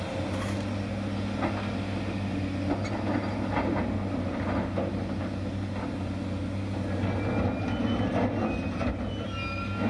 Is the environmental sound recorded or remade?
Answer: recorded